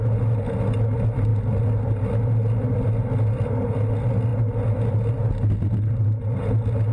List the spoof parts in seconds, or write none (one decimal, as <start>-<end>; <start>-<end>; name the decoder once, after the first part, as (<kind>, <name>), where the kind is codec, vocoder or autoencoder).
none

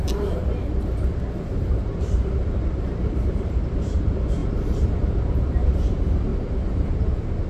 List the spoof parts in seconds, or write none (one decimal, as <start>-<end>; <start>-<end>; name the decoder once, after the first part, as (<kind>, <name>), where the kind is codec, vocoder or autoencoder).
0.0-0.4 (vocoder, BigVGAN v2); 1.6-6.3

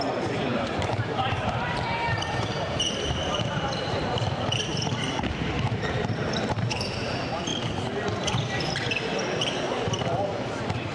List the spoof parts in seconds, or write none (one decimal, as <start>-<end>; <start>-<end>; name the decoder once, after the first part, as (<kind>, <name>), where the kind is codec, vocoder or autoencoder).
0.0-7.5 (vocoder, BigVGAN v2); 8.6-10.9

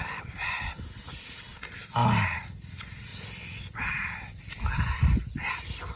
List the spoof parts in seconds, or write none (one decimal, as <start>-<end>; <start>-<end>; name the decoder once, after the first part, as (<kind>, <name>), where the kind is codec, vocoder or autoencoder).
4.3-5.5 (vocoder, BigVGAN v2)

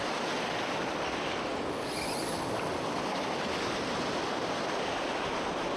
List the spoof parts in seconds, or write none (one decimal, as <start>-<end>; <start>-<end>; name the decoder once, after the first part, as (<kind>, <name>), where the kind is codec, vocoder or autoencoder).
none

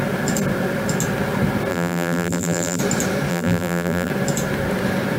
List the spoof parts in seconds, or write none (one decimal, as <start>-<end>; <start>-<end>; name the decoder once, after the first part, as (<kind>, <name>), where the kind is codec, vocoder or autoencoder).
1.7-2.8 (vocoder, BigVGAN v2); 3.3-4.1